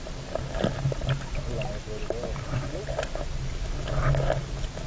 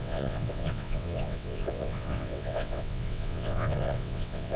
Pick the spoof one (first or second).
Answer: second